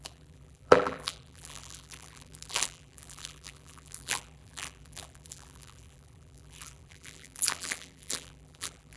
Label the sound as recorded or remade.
remade